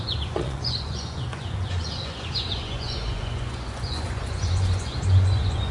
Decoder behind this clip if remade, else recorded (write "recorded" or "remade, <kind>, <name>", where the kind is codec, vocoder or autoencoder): remade, vocoder, Vocos